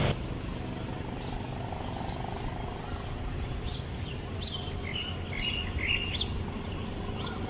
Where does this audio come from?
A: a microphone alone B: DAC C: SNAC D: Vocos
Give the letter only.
A